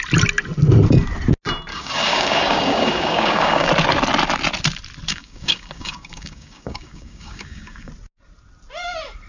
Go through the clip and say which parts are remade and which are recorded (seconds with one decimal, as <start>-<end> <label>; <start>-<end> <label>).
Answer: 0.0-1.7 recorded; 1.7-3.7 remade; 3.7-5.1 recorded; 5.1-7.9 remade; 7.9-9.3 recorded

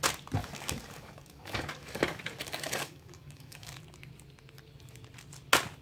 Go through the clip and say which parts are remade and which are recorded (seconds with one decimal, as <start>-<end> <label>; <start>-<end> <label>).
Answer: 0.0-0.4 recorded; 0.4-3.8 remade; 3.8-5.8 recorded

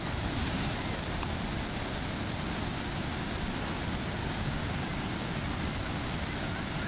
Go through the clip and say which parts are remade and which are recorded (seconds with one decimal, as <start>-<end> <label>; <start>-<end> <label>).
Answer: 0.0-4.2 recorded; 4.2-5.3 remade; 5.3-6.9 recorded

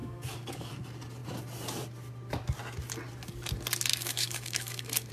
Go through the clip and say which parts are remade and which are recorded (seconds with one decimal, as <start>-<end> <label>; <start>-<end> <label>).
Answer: 0.0-0.7 remade; 0.7-3.9 recorded; 3.9-5.1 remade

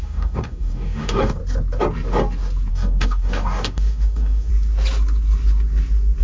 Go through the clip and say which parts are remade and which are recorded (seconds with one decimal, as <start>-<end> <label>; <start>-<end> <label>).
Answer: 0.0-1.4 remade; 1.4-2.7 recorded; 2.7-4.5 remade; 4.5-6.2 recorded